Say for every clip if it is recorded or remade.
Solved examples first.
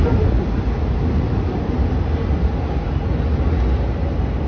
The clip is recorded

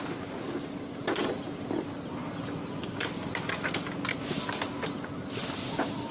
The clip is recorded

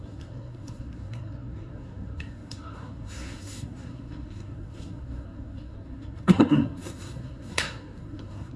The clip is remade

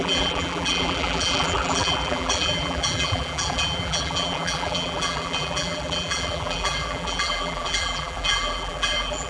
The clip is remade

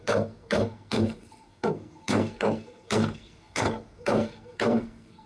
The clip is remade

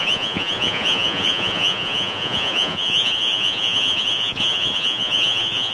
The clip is remade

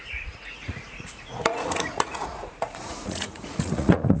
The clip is remade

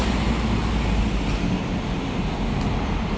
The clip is recorded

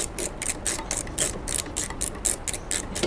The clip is recorded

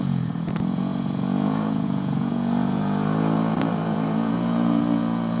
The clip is remade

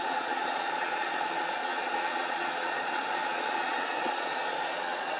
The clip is remade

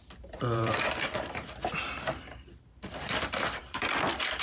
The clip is remade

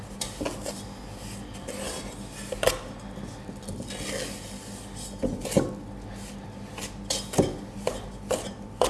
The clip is recorded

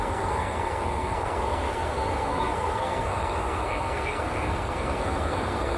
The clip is remade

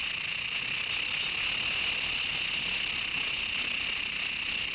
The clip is recorded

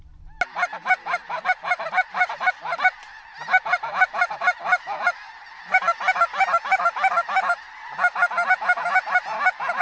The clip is recorded